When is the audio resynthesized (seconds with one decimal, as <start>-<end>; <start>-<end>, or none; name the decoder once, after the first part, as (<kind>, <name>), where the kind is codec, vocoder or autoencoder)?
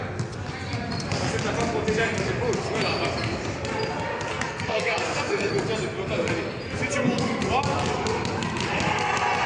4.3-5.5 (codec, SNAC)